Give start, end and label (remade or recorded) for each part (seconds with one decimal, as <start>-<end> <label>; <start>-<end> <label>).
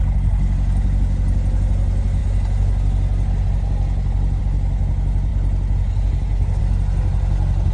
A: 0.0-7.7 recorded